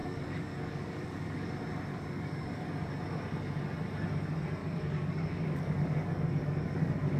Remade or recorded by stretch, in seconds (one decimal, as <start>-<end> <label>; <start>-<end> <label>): 0.0-1.5 remade; 1.5-1.9 recorded; 1.9-2.7 remade; 2.7-4.6 recorded; 4.6-7.2 remade